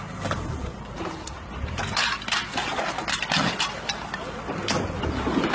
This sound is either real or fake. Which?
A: real